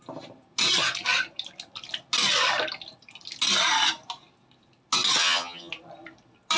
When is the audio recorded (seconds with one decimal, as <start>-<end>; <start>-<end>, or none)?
0.0-5.2; 5.7-6.6